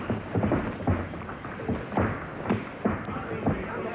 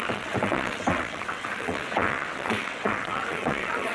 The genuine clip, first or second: first